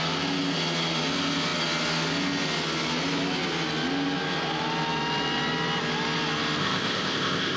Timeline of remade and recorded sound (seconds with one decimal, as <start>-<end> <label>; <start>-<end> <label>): 0.0-6.6 recorded; 6.6-7.6 remade